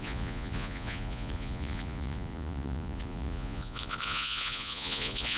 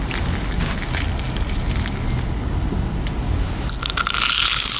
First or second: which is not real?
first